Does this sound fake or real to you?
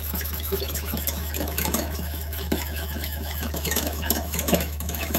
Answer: fake